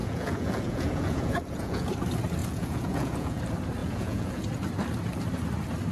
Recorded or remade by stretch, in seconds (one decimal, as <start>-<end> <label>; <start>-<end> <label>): 0.0-1.9 remade; 1.9-2.4 recorded; 2.4-3.4 remade; 3.4-3.8 recorded; 3.8-4.4 remade; 4.4-5.9 recorded